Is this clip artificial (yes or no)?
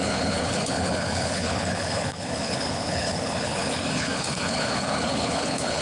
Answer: yes